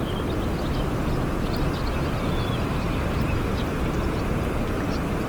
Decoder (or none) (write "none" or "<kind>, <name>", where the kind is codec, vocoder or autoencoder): none